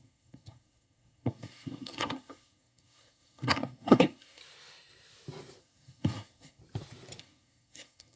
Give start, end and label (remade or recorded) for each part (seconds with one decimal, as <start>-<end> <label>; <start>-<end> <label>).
0.0-4.4 remade; 4.4-5.6 recorded; 5.6-6.6 remade; 6.6-7.2 recorded; 7.2-8.2 remade